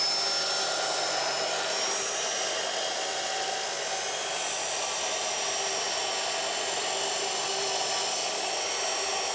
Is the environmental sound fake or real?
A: real